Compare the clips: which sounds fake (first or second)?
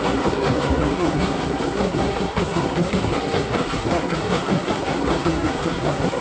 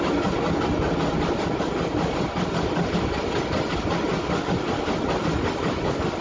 first